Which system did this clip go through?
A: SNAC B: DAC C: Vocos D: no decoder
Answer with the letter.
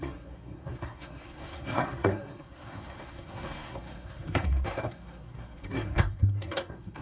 A